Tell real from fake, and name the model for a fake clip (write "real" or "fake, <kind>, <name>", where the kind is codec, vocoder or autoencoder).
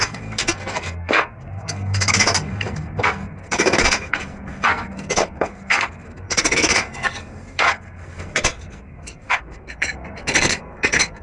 fake, codec, SNAC